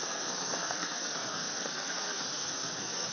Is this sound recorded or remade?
remade